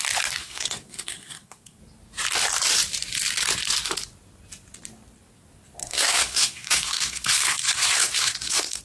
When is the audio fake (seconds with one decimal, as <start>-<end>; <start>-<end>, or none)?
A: 0.4-1.8; 5.8-8.8